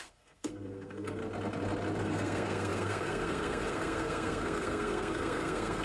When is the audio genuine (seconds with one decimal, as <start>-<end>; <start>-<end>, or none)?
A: 1.2-2.0